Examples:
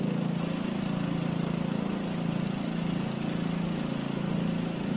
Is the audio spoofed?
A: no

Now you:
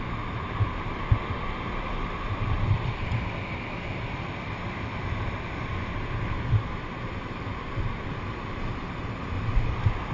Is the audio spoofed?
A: no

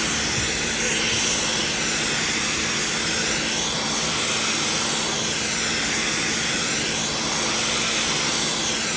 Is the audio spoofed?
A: no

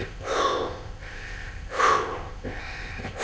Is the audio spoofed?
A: yes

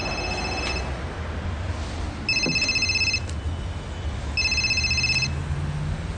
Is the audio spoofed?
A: no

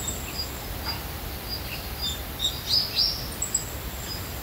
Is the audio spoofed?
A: no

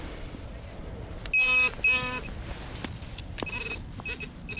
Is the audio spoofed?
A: no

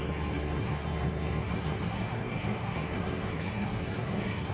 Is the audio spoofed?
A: yes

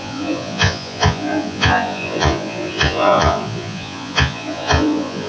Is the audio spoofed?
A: yes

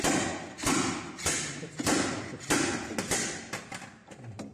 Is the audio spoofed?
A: no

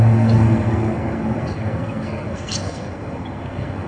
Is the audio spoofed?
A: yes